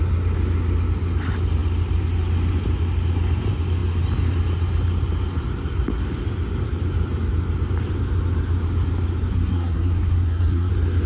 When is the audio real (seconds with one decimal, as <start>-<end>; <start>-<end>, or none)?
0.0-9.3; 10.7-11.1

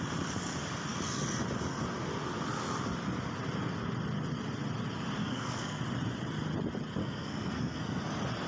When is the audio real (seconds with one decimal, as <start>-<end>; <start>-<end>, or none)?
0.0-5.2; 5.8-7.0; 8.0-8.5

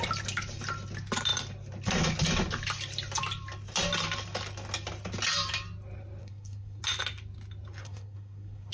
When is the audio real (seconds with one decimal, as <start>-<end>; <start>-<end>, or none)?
0.0-6.2; 6.8-7.8